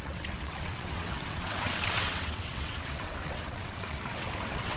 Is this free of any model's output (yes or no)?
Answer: no